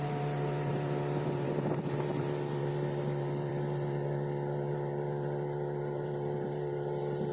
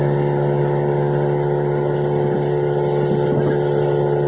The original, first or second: second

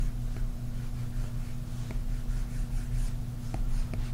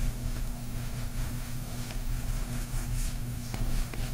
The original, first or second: first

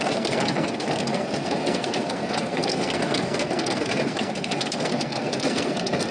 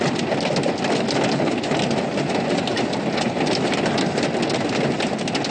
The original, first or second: second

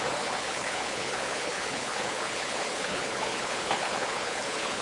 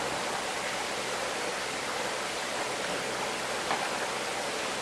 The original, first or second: second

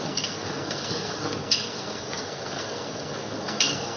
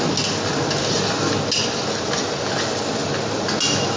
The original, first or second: second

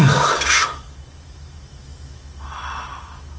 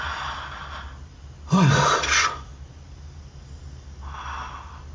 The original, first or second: second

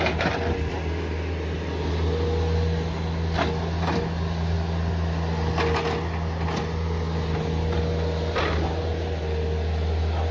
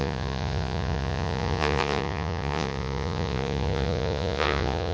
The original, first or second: first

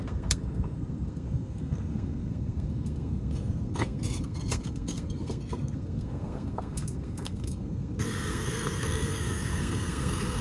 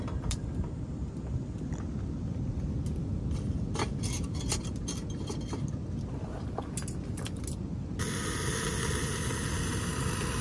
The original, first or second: second